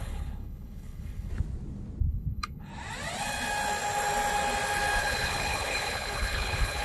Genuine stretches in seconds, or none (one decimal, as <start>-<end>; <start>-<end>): 1.3-2.0; 2.7-5.0